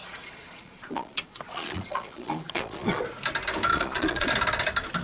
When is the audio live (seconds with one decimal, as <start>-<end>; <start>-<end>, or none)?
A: 3.0-3.7; 4.3-5.0